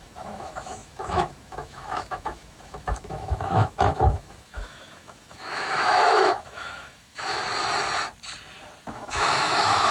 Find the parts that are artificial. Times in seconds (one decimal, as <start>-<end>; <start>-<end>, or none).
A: 0.0-7.4; 8.9-9.9